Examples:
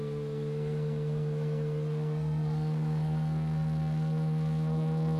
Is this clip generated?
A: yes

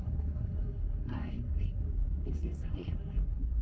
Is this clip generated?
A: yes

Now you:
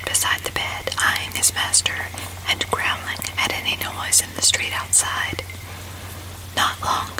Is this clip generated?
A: no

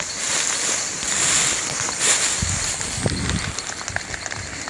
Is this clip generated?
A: no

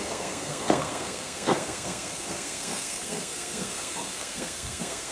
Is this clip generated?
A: yes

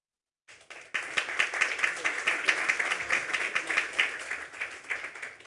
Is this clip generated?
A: no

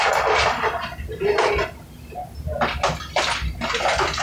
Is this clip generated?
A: no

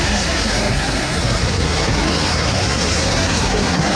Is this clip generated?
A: yes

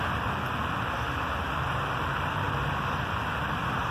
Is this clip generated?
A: no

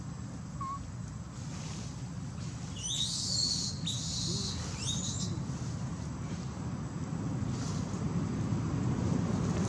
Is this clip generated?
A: no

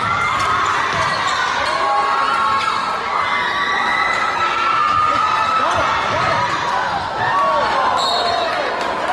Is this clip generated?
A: no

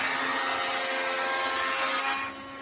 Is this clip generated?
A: no